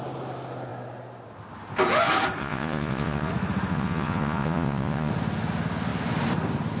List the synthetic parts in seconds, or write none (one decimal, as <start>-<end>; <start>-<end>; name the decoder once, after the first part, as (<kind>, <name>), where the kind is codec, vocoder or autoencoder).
2.4-3.3 (vocoder, Vocos); 3.7-5.1

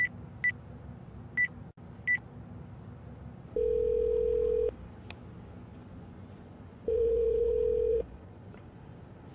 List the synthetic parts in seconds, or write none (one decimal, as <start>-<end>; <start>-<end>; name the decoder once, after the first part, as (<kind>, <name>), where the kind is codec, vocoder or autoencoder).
5.7-7.5 (vocoder, Vocos); 7.9-8.8

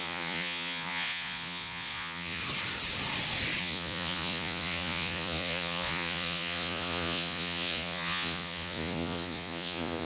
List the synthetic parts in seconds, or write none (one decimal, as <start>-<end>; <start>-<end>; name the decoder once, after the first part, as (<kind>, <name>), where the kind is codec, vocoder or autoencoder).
0.0-2.4 (vocoder, Vocos); 3.6-10.1

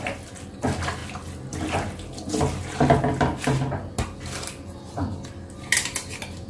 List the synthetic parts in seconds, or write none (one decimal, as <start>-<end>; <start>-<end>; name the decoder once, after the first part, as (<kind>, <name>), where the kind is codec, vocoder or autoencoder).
none